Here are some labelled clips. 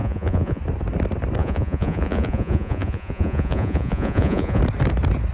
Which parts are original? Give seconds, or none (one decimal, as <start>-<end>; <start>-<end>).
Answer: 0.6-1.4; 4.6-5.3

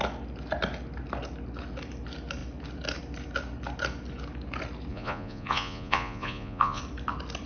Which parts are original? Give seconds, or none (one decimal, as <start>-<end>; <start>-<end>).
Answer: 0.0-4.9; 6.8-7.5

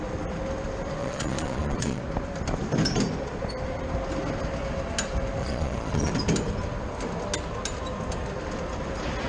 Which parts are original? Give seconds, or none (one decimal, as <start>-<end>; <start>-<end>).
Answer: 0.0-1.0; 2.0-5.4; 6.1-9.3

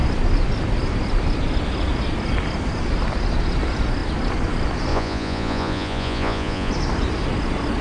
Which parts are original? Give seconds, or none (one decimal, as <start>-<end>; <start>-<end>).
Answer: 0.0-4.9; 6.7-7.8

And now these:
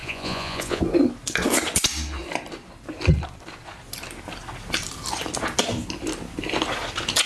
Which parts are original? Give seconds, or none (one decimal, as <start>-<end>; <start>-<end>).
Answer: 0.8-7.3

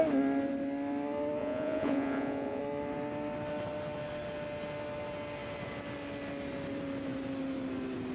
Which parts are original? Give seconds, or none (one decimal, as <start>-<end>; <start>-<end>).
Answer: 0.0-1.4; 2.6-8.1